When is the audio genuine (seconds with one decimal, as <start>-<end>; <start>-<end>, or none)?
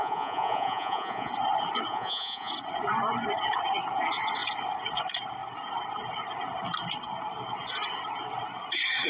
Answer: 1.3-1.9; 2.5-9.1